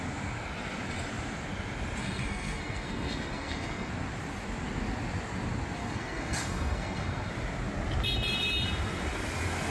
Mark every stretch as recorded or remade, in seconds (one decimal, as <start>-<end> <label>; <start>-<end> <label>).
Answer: 0.0-2.0 recorded; 2.0-3.9 remade; 3.9-5.8 recorded; 5.8-7.3 remade; 7.3-9.7 recorded

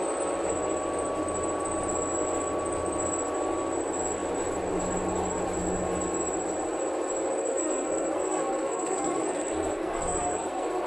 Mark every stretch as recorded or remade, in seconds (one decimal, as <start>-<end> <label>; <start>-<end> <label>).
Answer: 0.0-7.4 recorded; 7.4-10.9 remade